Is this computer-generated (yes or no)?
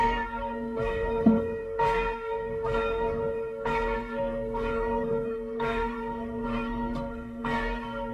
yes